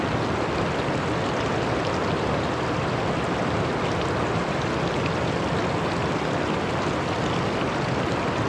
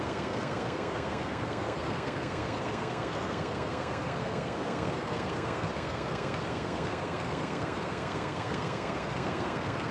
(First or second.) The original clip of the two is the first